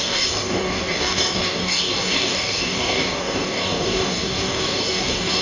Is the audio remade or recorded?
remade